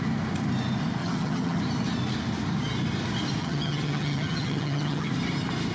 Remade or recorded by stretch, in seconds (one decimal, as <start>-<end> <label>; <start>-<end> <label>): 0.0-1.0 recorded; 1.0-1.6 remade; 1.6-3.4 recorded; 3.4-5.1 remade; 5.1-5.7 recorded